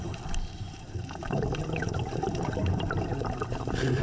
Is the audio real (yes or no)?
no